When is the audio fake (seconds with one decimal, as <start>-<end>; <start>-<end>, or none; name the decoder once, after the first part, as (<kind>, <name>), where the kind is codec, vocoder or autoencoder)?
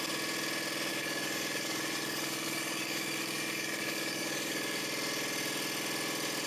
0.9-4.8 (codec, DAC)